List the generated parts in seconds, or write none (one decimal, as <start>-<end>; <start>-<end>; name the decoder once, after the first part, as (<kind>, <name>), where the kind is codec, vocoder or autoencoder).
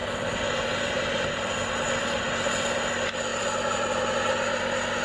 none